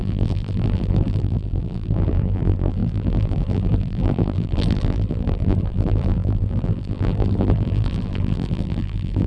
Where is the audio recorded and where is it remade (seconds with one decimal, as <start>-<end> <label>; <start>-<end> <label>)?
0.0-9.3 remade